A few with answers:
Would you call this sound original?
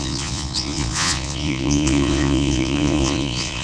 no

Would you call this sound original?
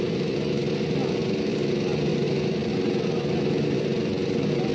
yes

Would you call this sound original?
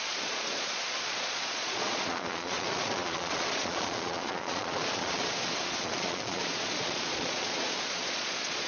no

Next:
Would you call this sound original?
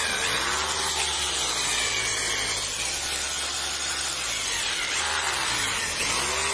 yes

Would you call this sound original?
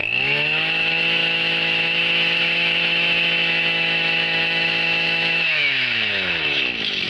no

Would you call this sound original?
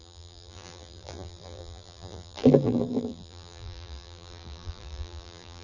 no